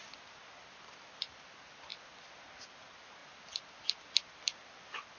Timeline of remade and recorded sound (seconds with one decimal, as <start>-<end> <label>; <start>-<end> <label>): 0.0-5.2 recorded

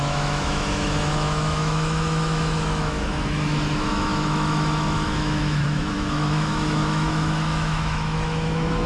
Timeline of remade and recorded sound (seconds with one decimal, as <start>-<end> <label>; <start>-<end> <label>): 0.0-8.9 remade

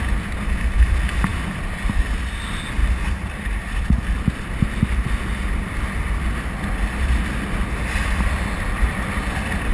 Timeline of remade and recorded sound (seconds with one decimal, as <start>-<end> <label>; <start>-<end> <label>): 0.0-9.7 recorded

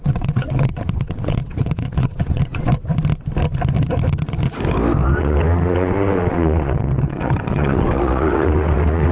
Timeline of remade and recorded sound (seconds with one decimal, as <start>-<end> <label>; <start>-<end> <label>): 0.0-2.8 remade; 2.8-5.2 recorded; 5.2-9.1 remade

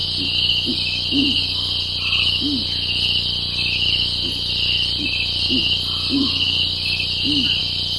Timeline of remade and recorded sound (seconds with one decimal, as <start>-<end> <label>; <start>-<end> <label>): 0.0-8.0 recorded

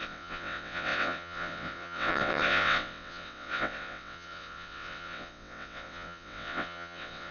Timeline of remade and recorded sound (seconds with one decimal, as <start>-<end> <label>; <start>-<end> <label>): 0.0-7.3 remade

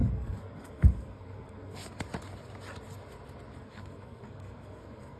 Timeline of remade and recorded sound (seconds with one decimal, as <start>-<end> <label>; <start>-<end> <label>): 0.0-1.8 remade; 1.8-3.6 recorded; 3.6-5.2 remade